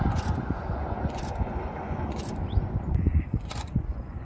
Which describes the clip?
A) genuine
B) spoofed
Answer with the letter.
B